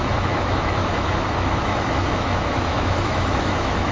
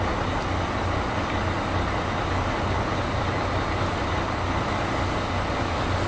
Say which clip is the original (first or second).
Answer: second